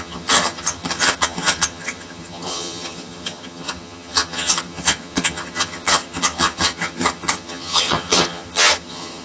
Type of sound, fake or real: fake